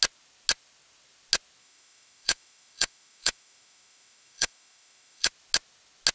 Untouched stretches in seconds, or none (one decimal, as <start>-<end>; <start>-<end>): 0.0-1.6; 5.3-6.1